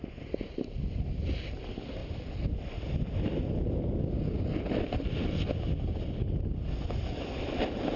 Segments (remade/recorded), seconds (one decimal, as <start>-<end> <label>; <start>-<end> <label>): 0.0-8.0 recorded